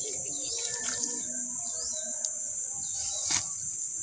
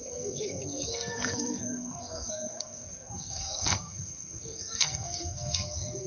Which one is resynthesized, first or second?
second